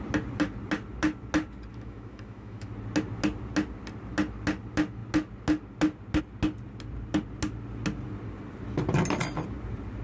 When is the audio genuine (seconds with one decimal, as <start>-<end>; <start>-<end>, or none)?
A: 0.0-1.7; 2.7-10.0